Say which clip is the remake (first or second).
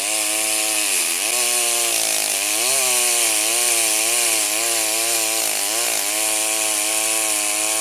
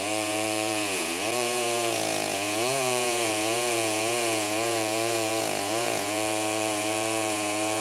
second